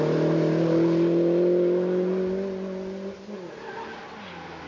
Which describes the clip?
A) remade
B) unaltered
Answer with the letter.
B